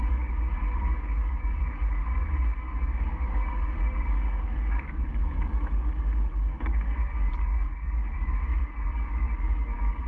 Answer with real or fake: fake